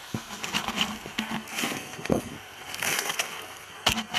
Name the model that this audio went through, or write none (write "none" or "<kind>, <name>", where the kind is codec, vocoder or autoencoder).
codec, SNAC